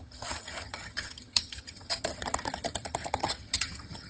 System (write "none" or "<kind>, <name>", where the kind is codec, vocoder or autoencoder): vocoder, HiFi-GAN